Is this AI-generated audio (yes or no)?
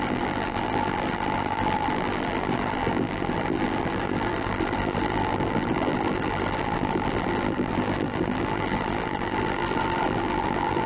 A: yes